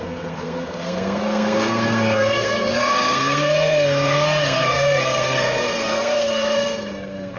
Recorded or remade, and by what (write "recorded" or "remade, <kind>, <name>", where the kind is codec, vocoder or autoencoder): remade, codec, SNAC